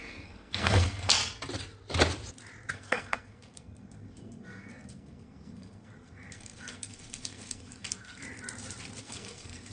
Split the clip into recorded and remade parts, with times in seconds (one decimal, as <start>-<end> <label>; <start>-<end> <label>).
0.0-1.2 remade; 1.2-2.7 recorded; 2.7-8.2 remade; 8.2-9.0 recorded; 9.0-9.7 remade